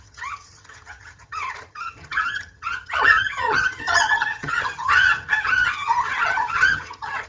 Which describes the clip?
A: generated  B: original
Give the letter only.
A